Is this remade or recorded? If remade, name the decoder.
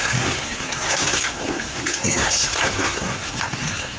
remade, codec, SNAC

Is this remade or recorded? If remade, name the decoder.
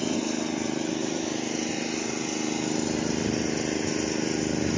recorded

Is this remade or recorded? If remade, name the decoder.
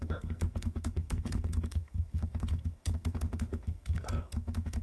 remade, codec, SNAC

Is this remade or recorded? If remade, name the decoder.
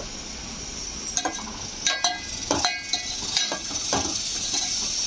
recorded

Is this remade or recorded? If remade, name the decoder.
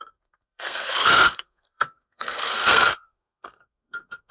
remade, codec, SNAC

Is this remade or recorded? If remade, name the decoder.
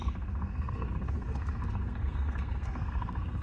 remade, codec, SNAC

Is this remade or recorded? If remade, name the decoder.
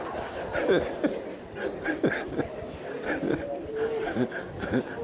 recorded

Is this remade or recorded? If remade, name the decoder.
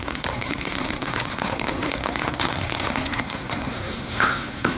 remade, codec, SNAC